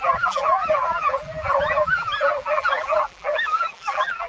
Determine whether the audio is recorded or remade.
remade